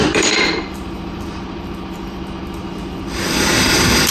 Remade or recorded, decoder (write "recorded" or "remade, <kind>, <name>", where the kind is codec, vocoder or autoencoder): remade, vocoder, BigVGAN v2